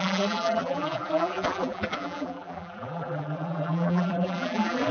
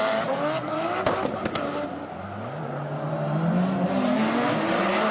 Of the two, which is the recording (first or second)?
second